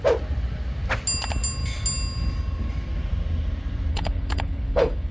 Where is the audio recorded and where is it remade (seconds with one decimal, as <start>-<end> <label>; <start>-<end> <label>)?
0.0-3.9 recorded; 3.9-5.1 remade